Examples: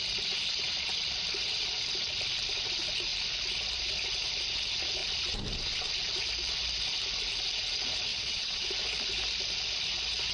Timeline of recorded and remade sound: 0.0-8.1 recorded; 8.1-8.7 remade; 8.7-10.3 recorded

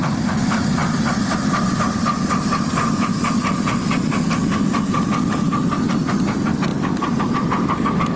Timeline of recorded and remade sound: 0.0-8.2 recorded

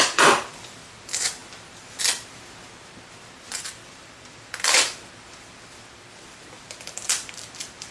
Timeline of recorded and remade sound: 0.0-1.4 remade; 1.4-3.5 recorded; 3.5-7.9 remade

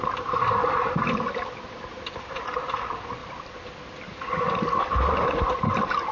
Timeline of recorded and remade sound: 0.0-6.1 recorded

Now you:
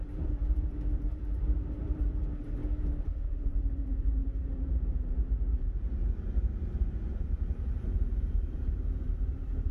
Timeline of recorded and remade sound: 0.0-2.6 remade; 2.6-3.3 recorded; 3.3-9.7 remade